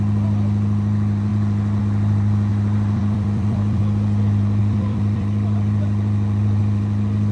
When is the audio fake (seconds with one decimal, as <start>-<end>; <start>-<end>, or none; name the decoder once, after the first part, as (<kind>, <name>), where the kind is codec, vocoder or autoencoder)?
2.5-3.8 (vocoder, BigVGAN v2); 4.6-6.6